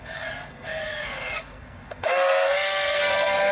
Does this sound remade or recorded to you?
remade